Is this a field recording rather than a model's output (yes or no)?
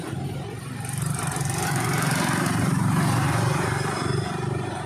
no